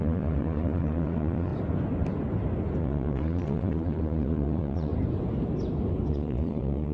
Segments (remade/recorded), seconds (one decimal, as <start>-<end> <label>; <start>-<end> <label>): 0.0-1.5 remade; 1.5-2.8 recorded; 2.8-4.9 remade; 4.9-6.1 recorded; 6.1-6.9 remade